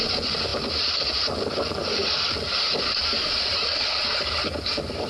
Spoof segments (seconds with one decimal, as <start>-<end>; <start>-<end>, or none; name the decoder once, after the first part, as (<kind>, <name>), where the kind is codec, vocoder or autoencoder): none